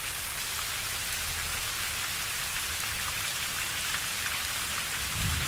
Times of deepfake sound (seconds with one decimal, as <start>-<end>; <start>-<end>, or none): none

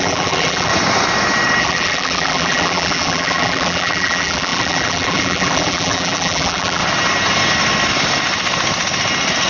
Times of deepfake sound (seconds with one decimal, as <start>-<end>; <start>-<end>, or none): 0.0-0.7; 1.6-6.8

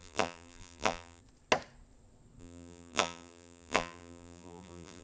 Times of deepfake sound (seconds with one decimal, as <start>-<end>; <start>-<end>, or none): 0.0-1.2; 2.4-5.0

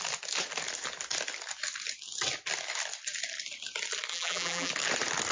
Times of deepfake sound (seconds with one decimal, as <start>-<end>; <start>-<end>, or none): 4.1-4.7

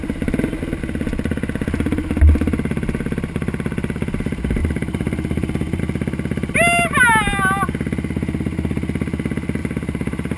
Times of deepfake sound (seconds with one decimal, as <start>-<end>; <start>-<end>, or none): 4.6-5.8; 9.6-10.4

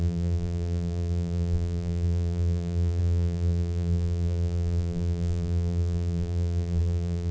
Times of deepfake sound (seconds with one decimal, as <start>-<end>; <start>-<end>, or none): 0.0-7.3